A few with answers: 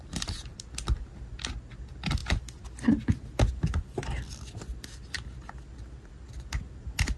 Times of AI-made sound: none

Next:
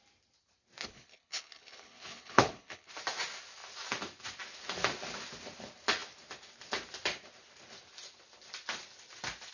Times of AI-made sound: 0.8-2.9 (codec, HILCodec)

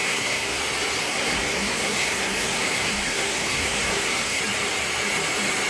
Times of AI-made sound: 0.0-0.6 (codec, SNAC); 1.0-4.4

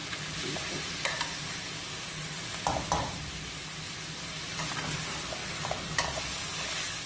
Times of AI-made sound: 5.4-6.2 (vocoder, BigVGAN v2)

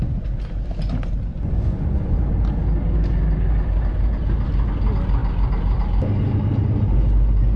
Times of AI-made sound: 1.3-2.2 (vocoder, Vocos)